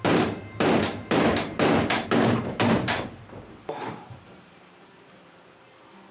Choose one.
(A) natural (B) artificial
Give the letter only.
B